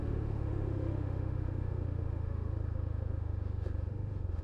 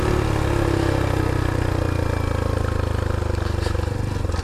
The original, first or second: second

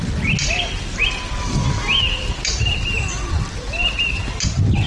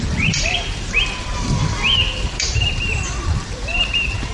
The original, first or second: first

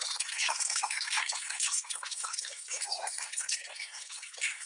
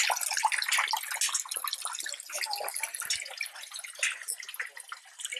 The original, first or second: second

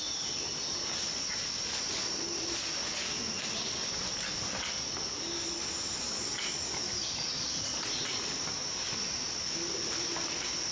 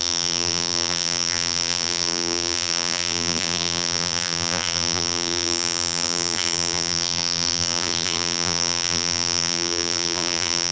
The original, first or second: first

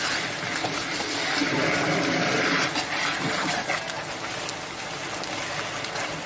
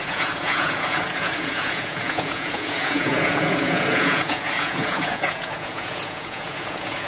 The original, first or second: first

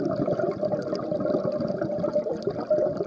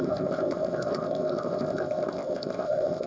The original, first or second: first